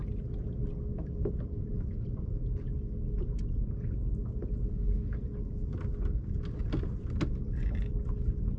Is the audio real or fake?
real